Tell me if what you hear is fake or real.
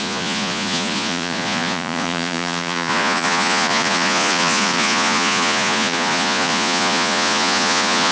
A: fake